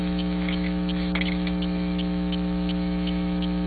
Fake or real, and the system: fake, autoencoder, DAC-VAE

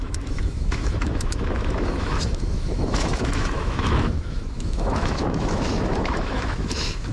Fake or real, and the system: fake, autoencoder, DAC-VAE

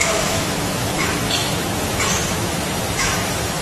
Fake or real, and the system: fake, autoencoder, DAC-VAE